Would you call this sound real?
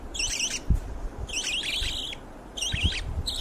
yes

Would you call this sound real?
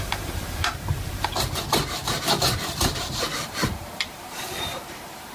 no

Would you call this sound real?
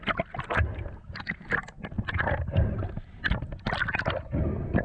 yes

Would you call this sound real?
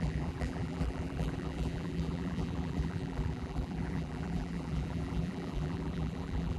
no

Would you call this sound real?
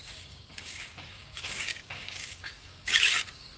no